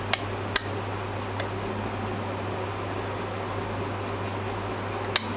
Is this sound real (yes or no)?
yes